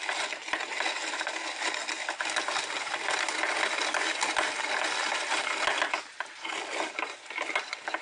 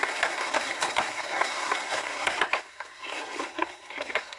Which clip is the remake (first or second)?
second